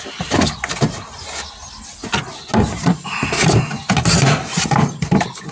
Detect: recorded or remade recorded